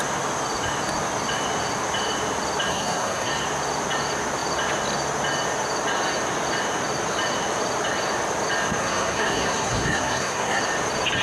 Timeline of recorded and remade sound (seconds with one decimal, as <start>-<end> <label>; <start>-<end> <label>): 0.0-2.7 recorded; 2.7-3.3 remade; 3.3-8.8 recorded; 8.8-10.6 remade; 10.6-11.2 recorded